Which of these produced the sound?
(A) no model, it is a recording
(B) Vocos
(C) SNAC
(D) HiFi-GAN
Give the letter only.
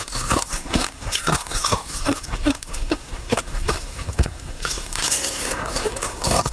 C